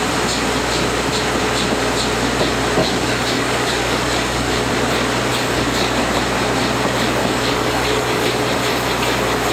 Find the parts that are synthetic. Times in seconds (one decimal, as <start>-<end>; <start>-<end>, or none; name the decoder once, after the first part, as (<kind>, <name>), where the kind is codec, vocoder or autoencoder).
2.8-4.7 (codec, DAC); 5.3-6.0; 7.2-8.2